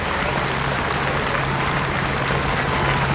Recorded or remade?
recorded